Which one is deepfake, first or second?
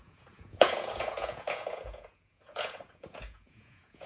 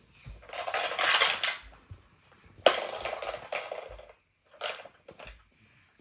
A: first